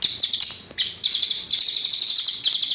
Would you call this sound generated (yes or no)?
no